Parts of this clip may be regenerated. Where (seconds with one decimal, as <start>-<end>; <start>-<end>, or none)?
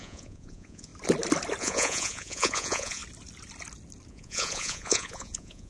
0.0-0.9; 1.6-3.0; 4.1-5.7